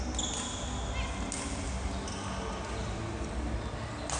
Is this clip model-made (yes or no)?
no